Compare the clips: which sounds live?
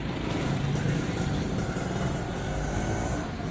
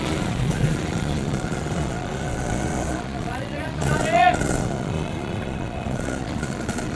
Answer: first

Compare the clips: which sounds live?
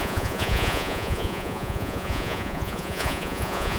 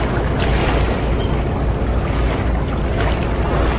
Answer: second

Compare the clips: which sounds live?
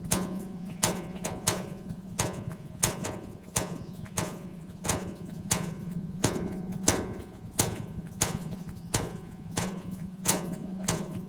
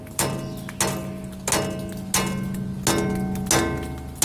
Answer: second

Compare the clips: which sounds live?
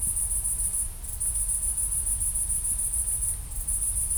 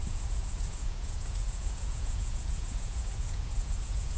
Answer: first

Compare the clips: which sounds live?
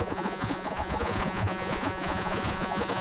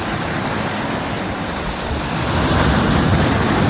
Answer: second